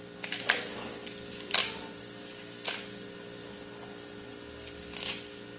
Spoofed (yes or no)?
yes